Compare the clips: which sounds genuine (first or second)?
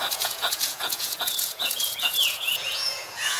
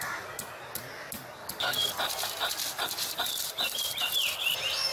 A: second